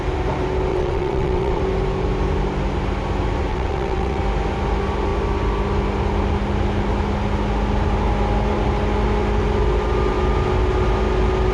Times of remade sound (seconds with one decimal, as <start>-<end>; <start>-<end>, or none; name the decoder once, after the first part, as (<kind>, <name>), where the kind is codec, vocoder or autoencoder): 0.7-1.6 (vocoder, WaveNeXt); 3.5-4.2